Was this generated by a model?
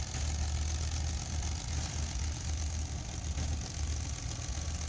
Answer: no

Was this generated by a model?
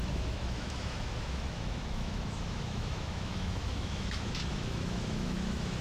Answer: yes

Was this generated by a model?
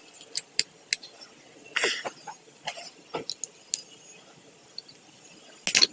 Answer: no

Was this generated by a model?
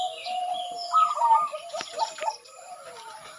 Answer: no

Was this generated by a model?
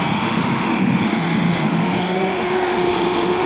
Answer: yes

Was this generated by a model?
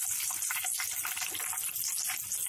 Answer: no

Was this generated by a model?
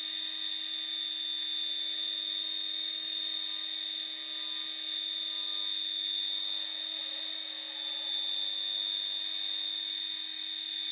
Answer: no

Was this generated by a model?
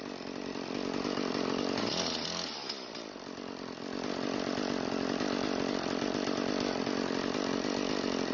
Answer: no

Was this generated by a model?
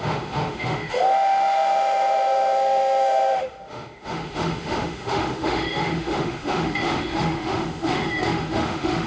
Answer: yes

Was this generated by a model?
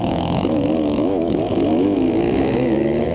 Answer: yes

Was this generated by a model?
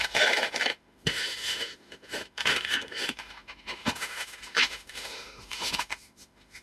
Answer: yes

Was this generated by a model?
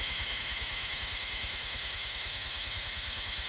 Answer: yes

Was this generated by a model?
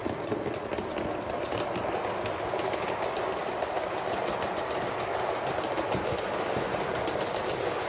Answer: no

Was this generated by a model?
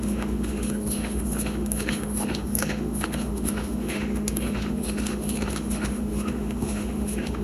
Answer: yes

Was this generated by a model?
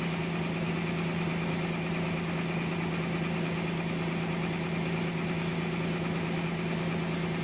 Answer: no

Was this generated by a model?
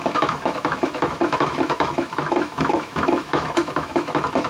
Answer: yes